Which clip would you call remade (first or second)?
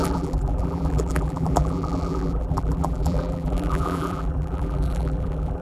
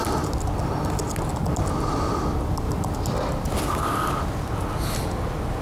first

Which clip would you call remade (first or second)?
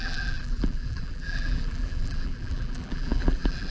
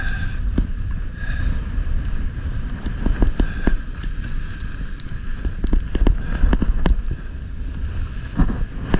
first